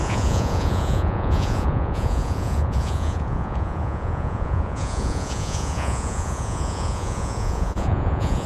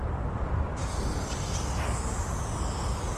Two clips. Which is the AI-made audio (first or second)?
first